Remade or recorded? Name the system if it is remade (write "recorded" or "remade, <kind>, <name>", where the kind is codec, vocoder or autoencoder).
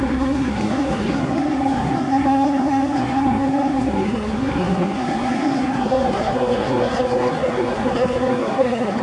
remade, codec, SNAC